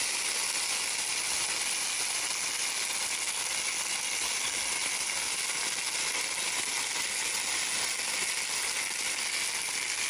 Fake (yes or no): no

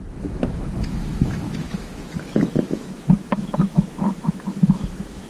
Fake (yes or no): yes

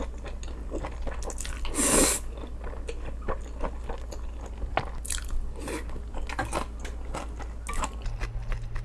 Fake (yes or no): no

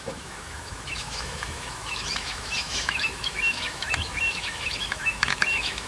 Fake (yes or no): yes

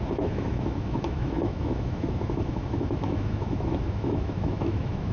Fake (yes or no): yes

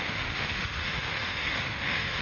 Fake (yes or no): yes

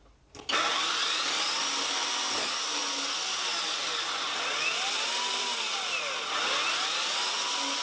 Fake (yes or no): no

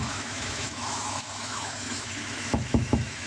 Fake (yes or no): yes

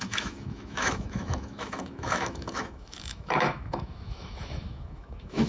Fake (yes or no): yes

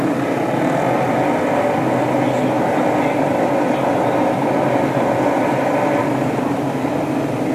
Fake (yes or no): no